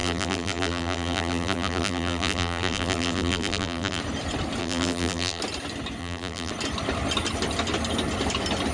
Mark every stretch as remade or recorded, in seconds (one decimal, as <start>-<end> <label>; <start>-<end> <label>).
0.0-4.0 remade; 4.0-4.6 recorded; 4.6-5.4 remade; 5.4-6.0 recorded; 6.0-6.5 remade; 6.5-8.7 recorded